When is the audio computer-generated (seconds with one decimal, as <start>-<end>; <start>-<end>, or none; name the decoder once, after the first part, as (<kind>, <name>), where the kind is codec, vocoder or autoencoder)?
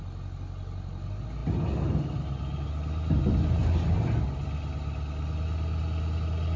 none